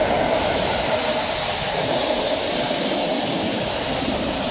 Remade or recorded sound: recorded